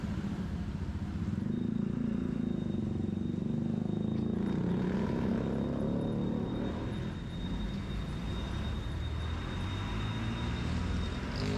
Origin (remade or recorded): recorded